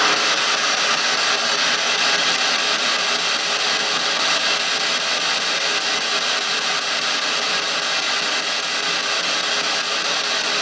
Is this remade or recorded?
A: recorded